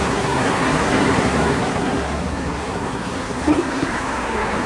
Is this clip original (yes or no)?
no